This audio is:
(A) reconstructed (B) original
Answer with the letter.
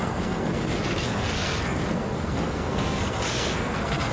A